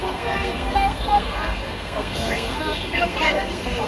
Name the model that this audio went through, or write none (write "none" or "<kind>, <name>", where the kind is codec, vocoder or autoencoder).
codec, SNAC